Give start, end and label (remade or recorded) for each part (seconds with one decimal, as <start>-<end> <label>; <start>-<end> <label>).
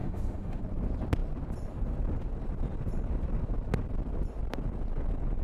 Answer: 0.0-0.6 remade; 0.6-5.4 recorded